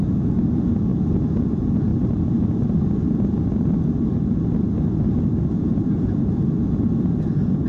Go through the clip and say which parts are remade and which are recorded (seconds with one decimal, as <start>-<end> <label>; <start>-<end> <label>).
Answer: 0.0-0.9 remade; 0.9-1.4 recorded; 1.4-1.9 remade; 1.9-5.4 recorded; 5.4-7.7 remade